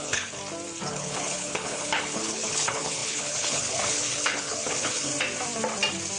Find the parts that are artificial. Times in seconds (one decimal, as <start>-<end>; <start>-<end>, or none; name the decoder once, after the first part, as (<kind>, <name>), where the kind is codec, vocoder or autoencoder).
0.0-0.4 (codec, HILCodec); 0.9-5.1